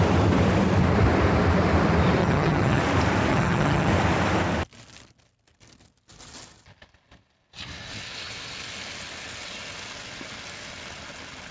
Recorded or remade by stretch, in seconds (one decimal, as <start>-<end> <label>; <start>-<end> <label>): 0.0-2.2 recorded; 2.2-2.8 remade; 2.8-3.3 recorded; 3.3-3.9 remade; 3.9-11.5 recorded